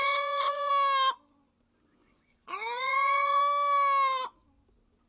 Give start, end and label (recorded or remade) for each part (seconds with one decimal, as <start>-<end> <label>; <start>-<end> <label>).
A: 0.0-0.7 remade; 0.7-2.0 recorded; 2.0-3.4 remade; 3.4-5.1 recorded